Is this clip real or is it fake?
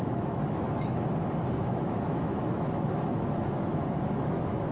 fake